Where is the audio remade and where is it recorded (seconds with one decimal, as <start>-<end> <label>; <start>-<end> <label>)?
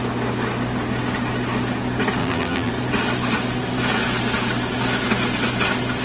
0.0-2.2 recorded; 2.2-2.7 remade; 2.7-6.0 recorded